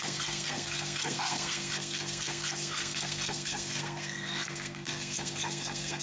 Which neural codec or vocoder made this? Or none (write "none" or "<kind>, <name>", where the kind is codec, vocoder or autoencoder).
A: codec, SNAC